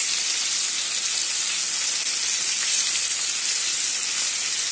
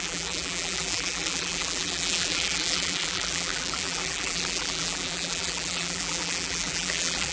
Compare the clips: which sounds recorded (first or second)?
first